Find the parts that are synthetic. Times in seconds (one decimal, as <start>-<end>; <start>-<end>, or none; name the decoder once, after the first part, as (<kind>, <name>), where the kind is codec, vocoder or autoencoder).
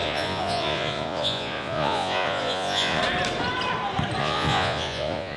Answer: 0.0-3.0 (vocoder, Vocos); 4.2-5.4